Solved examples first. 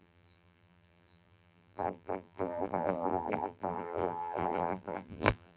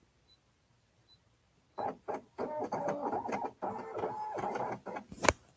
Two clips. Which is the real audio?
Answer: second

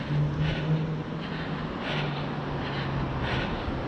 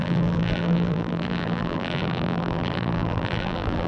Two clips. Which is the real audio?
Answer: first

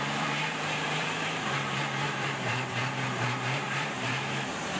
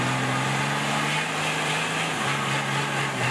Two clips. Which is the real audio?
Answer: second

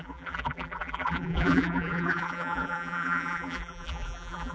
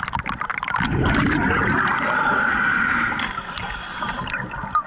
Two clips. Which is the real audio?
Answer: second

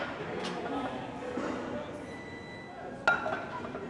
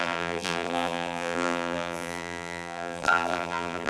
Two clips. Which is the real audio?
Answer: first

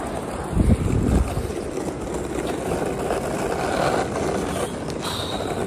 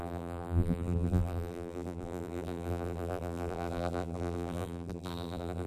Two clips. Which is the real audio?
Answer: first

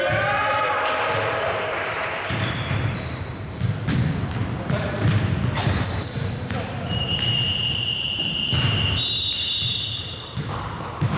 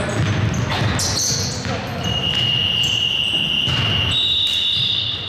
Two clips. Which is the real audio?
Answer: second